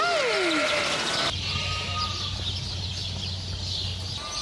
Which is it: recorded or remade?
recorded